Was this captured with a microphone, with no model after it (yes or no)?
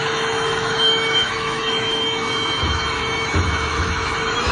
no